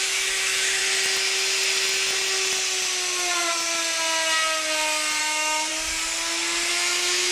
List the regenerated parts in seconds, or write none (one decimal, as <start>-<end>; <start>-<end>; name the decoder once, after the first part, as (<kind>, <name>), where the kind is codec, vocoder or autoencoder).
0.0-0.8 (autoencoder, DAC-VAE); 5.2-5.7; 6.7-7.3